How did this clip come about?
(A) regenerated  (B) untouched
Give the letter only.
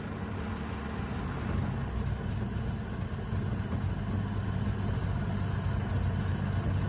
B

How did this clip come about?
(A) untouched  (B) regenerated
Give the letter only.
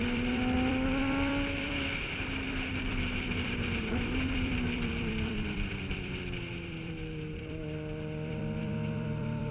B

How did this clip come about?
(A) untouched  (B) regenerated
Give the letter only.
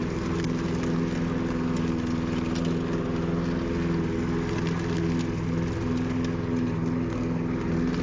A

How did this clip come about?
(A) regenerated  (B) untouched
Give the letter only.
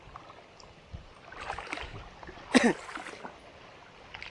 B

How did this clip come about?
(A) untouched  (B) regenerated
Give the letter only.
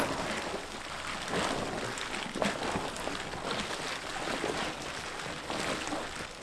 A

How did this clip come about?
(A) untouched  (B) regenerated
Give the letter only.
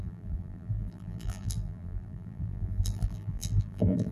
B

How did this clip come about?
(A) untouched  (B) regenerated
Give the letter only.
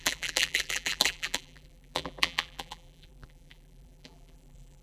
B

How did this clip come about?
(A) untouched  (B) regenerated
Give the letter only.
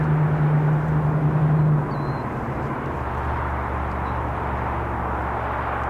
A